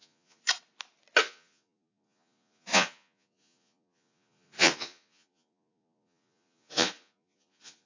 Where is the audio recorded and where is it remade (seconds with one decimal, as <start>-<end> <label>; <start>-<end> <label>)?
0.0-0.4 remade; 0.4-1.2 recorded; 1.2-7.9 remade